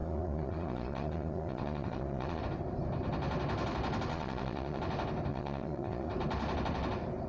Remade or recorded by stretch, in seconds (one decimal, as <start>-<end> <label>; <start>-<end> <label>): 0.0-2.4 remade; 2.4-4.1 recorded; 4.1-4.8 remade; 4.8-5.3 recorded; 5.3-6.1 remade; 6.1-7.3 recorded